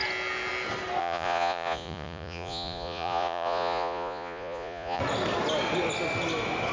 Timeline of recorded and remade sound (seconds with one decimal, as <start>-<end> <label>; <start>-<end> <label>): 0.0-1.0 recorded; 1.0-5.0 remade; 5.0-6.7 recorded